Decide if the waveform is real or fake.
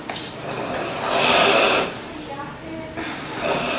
real